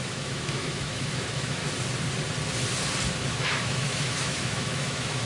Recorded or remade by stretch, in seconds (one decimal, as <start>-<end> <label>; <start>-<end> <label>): 0.0-1.6 remade; 1.6-3.3 recorded; 3.3-5.3 remade